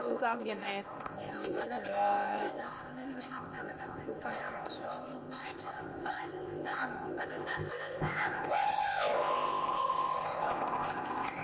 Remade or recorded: remade